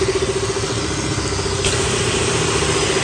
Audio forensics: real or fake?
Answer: real